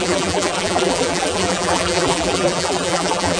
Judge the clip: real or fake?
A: fake